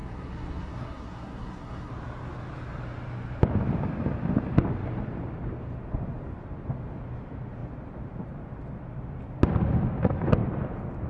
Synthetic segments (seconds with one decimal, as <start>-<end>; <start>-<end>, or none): 0.0-1.9